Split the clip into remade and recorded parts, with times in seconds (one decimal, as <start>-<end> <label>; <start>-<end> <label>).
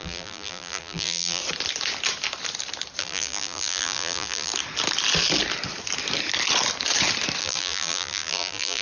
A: 0.0-1.4 remade; 1.4-3.0 recorded; 3.0-4.5 remade; 4.5-7.4 recorded; 7.4-8.8 remade